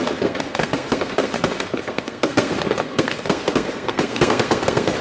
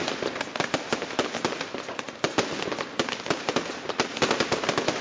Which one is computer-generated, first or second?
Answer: first